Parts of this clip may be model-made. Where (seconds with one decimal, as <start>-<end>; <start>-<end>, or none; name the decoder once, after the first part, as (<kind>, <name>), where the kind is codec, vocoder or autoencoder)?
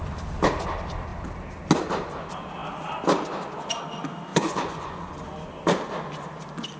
4.3-5.1 (vocoder, Vocos)